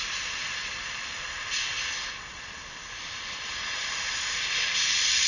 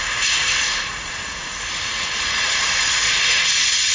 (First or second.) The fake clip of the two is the second